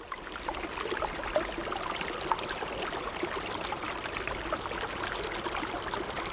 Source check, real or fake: real